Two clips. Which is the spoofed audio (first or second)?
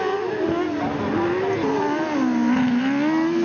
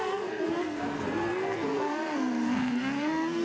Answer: second